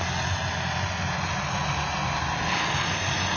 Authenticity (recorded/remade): recorded